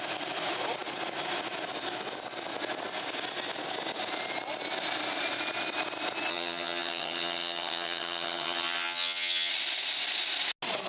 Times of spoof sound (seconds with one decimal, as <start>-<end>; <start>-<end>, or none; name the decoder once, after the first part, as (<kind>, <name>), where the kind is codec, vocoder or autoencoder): 6.3-9.5 (vocoder, HiFi-GAN)